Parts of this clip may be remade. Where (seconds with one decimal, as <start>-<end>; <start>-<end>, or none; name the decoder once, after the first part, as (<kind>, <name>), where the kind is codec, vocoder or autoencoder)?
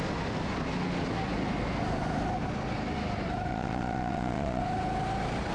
3.5-4.6 (vocoder, Vocos)